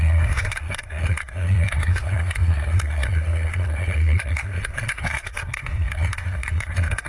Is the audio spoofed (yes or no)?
yes